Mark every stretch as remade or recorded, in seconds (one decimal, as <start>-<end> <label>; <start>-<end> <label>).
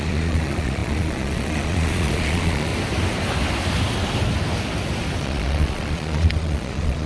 0.0-2.7 remade; 2.7-5.2 recorded; 5.2-7.1 remade